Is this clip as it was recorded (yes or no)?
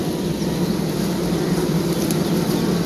yes